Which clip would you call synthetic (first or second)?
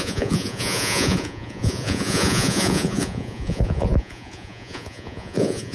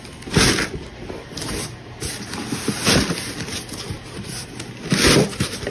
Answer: first